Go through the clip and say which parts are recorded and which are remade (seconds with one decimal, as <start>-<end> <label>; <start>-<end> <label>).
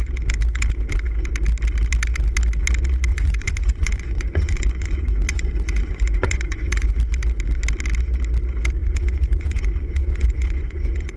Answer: 0.0-3.1 recorded; 3.1-6.9 remade; 6.9-8.8 recorded; 8.8-11.2 remade